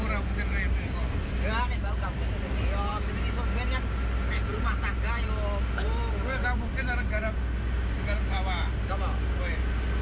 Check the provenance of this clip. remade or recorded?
recorded